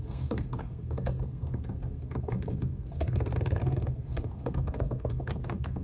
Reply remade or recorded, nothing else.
remade